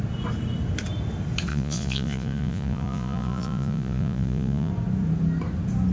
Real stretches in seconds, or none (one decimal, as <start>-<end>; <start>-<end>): 0.0-1.5; 4.7-5.9